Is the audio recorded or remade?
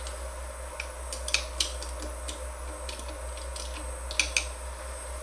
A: recorded